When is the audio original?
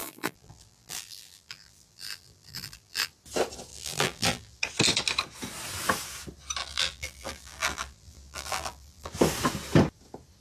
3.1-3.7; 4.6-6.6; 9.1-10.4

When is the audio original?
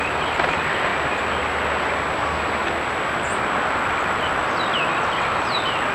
0.9-3.6